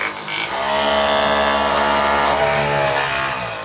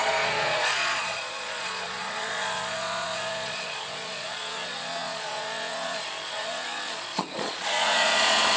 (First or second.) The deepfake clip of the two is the second